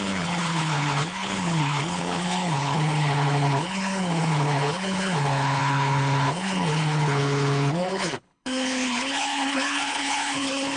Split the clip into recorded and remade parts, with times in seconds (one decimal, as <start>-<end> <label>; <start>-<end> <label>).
0.0-10.8 remade